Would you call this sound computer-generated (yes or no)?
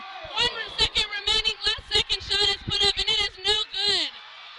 yes